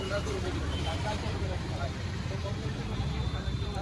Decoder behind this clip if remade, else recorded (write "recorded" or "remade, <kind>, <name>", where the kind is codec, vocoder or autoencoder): remade, vocoder, BigVGAN v2